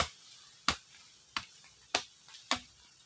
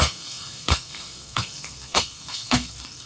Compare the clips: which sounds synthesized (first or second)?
second